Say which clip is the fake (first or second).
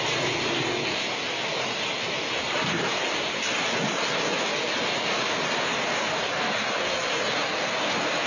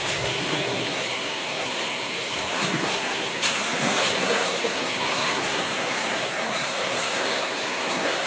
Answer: second